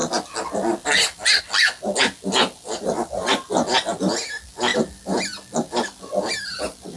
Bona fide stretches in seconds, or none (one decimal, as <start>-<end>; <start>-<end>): 1.4-4.7; 6.5-7.0

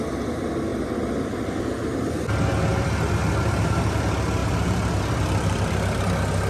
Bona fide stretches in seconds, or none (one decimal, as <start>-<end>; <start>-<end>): 0.0-0.7; 1.6-2.7; 3.2-4.4; 6.0-6.5